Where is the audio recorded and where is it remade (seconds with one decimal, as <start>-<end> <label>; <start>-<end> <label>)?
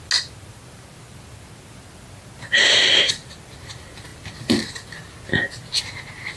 0.0-6.4 recorded